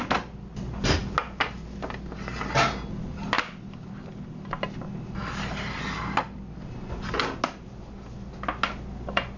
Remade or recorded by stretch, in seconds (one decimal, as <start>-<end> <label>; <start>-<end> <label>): 0.0-9.4 recorded